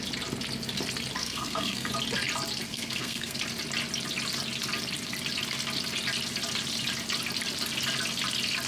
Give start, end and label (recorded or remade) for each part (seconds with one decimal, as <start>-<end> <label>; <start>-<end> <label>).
0.0-1.2 recorded; 1.2-1.9 remade; 1.9-2.7 recorded; 2.7-3.4 remade; 3.4-8.7 recorded